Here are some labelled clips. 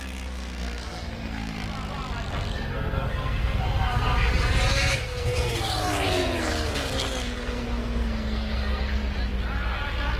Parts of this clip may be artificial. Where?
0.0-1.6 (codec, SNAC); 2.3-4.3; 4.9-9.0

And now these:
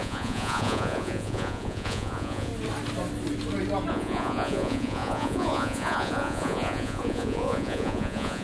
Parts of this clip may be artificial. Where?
0.0-2.5 (vocoder, Vocos); 3.9-8.4

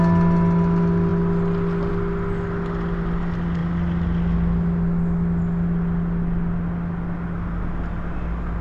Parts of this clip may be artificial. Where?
none